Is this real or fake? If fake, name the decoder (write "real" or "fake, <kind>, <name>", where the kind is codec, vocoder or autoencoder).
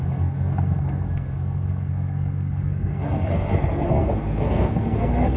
fake, codec, SNAC